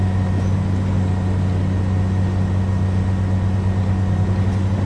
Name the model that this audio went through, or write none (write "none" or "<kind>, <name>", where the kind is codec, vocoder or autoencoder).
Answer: none